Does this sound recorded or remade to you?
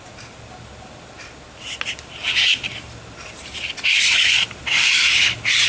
recorded